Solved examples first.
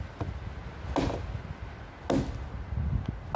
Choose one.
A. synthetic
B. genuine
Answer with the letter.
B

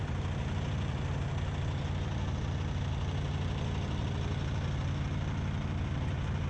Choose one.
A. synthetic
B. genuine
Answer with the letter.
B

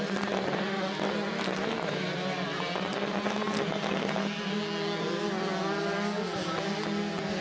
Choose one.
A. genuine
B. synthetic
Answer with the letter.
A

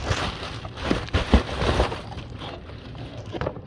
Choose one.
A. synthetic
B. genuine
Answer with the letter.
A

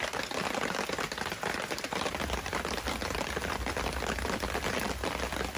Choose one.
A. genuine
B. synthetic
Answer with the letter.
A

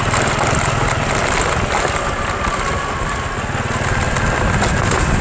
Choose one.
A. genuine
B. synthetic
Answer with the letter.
A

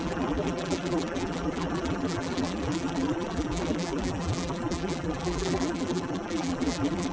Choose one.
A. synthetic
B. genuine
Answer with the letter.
A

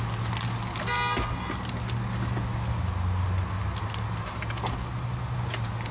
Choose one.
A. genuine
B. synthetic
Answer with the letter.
A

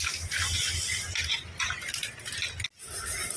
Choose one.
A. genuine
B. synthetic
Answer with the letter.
A